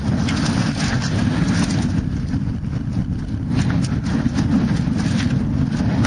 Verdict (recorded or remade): recorded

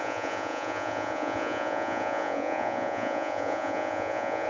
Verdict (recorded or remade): remade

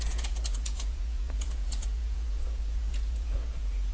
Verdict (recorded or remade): remade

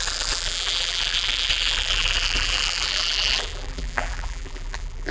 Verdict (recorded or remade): remade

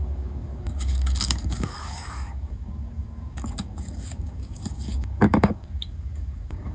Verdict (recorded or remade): remade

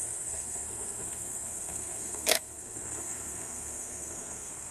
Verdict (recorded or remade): remade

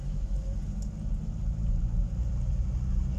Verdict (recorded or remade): recorded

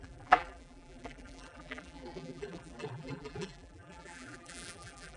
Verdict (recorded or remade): remade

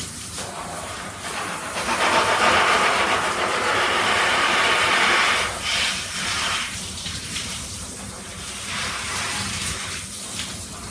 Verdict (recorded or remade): remade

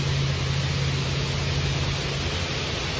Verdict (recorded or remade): recorded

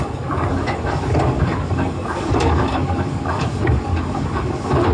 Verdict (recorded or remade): remade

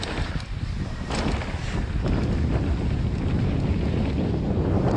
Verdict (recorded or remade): recorded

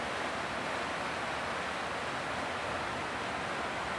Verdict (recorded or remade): recorded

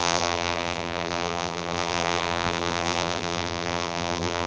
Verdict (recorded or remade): remade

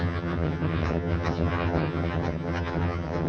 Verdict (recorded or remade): remade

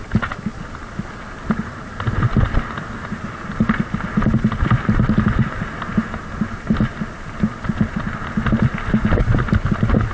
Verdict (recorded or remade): recorded